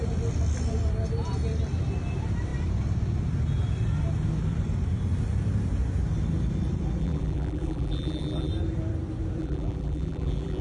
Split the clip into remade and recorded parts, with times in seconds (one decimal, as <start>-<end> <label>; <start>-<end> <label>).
0.0-7.0 recorded; 7.0-8.5 remade; 8.5-9.4 recorded; 9.4-10.6 remade

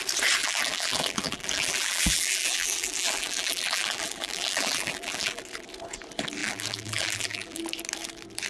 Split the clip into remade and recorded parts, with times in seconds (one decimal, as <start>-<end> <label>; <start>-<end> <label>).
0.0-0.4 recorded; 0.4-5.4 remade; 5.4-6.4 recorded; 6.4-7.6 remade; 7.6-8.5 recorded

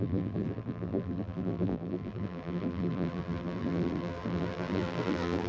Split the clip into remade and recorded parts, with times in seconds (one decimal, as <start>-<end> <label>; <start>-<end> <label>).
0.0-5.5 remade

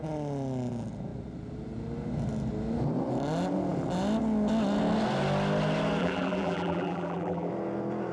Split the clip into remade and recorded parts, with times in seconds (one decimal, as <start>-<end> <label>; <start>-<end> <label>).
0.0-6.0 recorded; 6.0-7.5 remade; 7.5-8.1 recorded